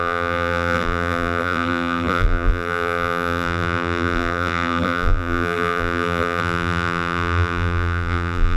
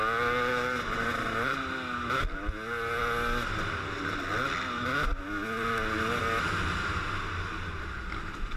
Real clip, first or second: second